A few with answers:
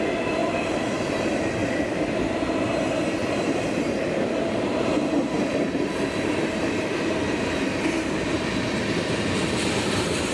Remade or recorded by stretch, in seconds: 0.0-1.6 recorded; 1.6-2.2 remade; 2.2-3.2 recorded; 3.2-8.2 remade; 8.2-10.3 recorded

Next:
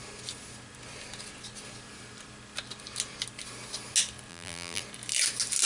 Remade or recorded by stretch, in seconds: 0.0-4.3 recorded; 4.3-4.8 remade; 4.8-5.7 recorded

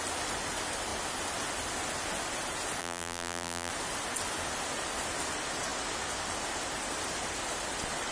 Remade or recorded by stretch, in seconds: 0.0-2.8 recorded; 2.8-3.7 remade; 3.7-8.1 recorded